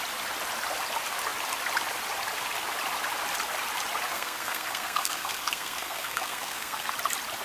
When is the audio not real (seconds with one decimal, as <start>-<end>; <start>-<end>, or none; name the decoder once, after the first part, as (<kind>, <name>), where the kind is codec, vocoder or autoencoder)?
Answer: 4.1-6.9 (codec, SNAC)